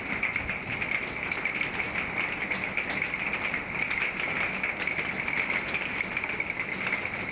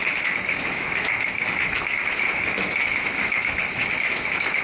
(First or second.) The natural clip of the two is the first